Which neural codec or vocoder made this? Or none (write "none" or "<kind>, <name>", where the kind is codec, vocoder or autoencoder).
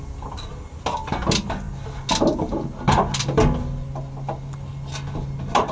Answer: none